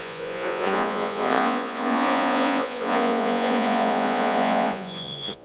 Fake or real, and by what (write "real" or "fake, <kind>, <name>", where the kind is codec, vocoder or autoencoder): fake, vocoder, Vocos